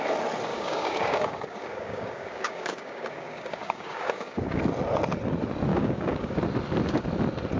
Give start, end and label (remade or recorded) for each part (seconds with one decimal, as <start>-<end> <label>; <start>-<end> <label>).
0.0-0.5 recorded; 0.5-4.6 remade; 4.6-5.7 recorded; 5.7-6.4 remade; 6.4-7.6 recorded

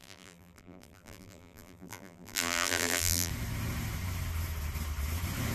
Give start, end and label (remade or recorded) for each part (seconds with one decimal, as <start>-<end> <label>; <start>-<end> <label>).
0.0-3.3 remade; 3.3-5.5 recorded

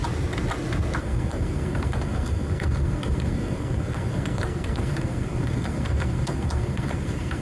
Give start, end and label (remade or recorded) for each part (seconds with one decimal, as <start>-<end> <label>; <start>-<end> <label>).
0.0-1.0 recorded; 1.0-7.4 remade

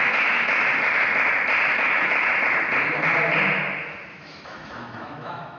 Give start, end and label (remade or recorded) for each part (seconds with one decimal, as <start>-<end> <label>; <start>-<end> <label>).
0.0-0.6 remade; 0.6-1.7 recorded; 1.7-2.3 remade; 2.3-4.1 recorded; 4.1-5.6 remade